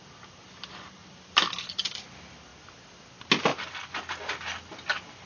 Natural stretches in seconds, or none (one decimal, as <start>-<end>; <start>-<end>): 0.0-1.0; 2.1-2.5; 3.1-5.3